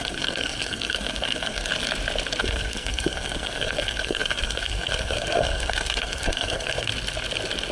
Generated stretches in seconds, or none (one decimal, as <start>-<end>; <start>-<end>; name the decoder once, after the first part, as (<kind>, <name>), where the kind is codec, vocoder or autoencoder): 0.0-1.7 (codec, SNAC); 2.4-6.9